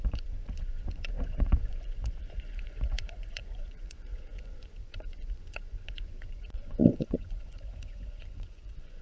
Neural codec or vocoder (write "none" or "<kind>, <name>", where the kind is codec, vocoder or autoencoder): vocoder, Vocos